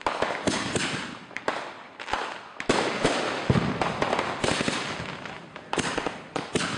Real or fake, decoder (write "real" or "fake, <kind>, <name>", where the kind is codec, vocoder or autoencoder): real